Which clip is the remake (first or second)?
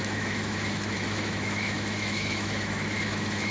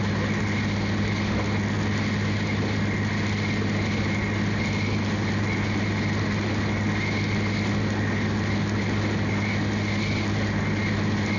first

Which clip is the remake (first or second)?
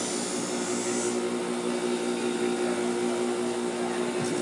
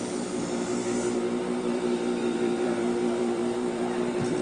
second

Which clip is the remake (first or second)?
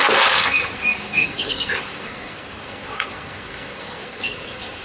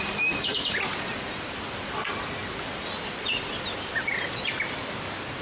first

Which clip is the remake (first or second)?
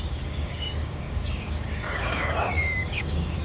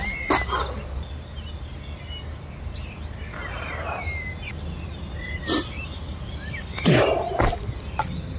first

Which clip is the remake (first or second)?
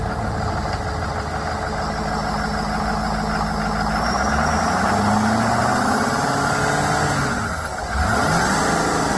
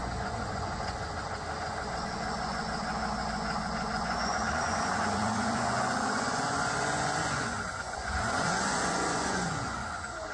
second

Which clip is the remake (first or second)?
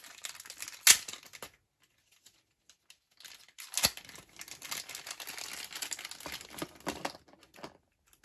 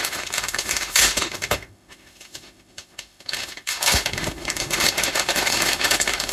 second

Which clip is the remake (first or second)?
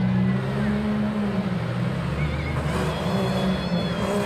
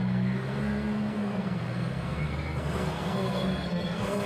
second